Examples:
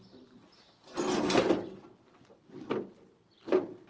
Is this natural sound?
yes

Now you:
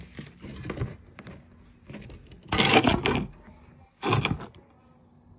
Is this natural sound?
yes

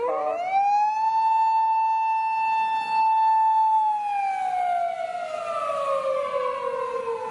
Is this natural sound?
yes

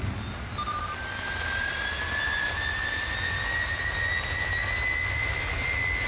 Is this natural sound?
yes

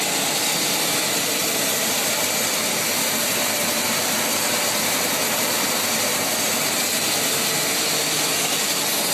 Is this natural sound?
yes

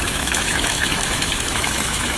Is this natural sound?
no